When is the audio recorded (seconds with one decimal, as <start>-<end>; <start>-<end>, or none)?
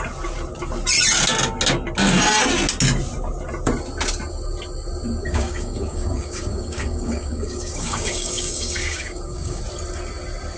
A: 0.0-5.2; 9.6-10.6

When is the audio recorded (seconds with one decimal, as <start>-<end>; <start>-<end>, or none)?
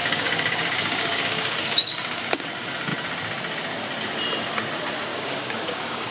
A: 2.4-5.1